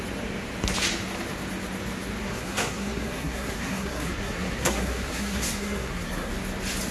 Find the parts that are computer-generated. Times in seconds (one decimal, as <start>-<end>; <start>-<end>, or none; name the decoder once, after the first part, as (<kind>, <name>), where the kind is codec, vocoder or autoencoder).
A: 2.2-6.3 (codec, SNAC)